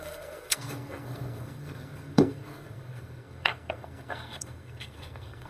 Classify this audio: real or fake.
fake